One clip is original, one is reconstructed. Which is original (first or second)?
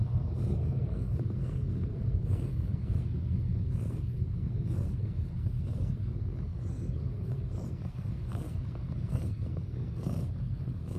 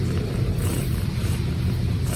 second